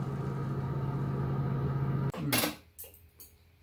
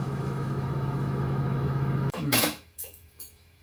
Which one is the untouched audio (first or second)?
first